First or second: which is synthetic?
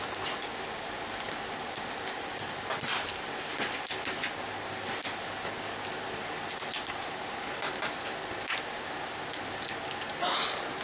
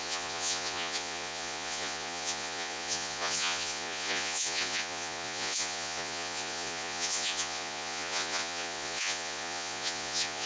second